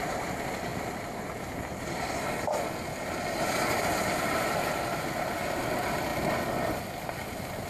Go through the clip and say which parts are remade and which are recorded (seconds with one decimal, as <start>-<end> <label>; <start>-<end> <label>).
0.0-7.7 recorded